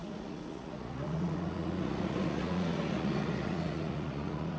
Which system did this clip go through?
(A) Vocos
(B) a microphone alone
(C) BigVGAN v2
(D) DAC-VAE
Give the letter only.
A